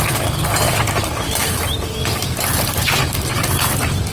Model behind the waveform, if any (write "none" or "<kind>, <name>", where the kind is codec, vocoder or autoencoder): none